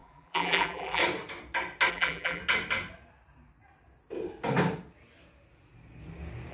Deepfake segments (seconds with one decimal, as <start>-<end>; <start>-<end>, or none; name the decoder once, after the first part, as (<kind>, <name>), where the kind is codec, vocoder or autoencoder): 0.0-1.0 (vocoder, BigVGAN v2); 1.9-2.4